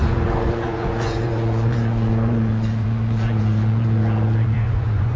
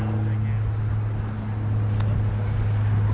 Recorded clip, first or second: second